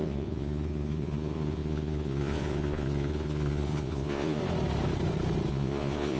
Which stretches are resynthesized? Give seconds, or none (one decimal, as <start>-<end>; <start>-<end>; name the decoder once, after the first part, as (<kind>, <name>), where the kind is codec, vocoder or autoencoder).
0.0-4.4 (vocoder, Vocos); 5.5-6.2